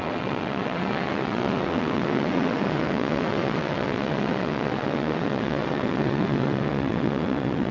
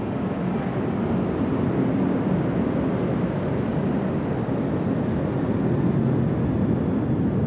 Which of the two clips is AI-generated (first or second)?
first